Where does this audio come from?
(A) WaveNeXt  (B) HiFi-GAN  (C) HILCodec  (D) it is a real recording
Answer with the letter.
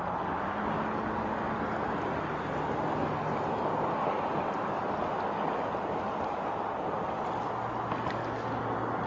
D